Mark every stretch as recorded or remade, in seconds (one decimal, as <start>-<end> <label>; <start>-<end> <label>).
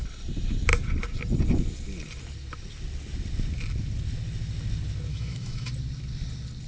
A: 0.0-5.1 recorded; 5.1-5.7 remade; 5.7-6.7 recorded